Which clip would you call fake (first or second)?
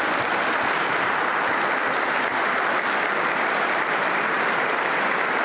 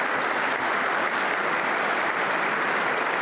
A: second